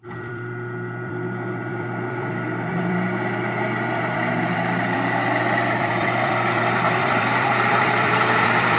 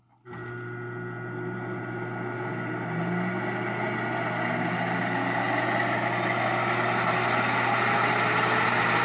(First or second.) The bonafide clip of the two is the second